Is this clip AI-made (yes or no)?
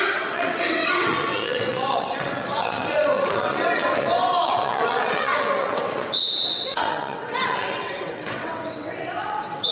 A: yes